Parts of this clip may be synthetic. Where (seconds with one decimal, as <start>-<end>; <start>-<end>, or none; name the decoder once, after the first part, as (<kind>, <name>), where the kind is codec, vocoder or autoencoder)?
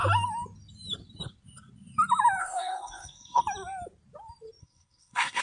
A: 2.4-3.4 (codec, SNAC); 4.6-5.4